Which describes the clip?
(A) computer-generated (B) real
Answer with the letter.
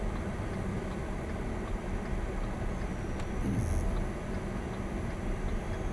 B